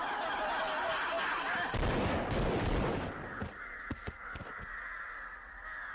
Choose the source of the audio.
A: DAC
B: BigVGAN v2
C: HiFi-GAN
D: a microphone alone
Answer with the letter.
D